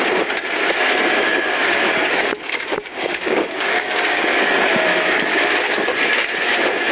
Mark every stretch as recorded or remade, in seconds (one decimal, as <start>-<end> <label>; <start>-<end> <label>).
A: 0.0-1.6 recorded; 1.6-4.2 remade; 4.2-4.9 recorded; 4.9-5.6 remade; 5.6-6.9 recorded